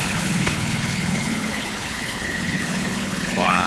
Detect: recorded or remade remade